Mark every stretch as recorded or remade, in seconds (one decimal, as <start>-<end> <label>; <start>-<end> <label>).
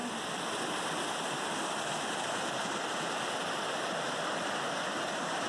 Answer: 0.0-5.5 recorded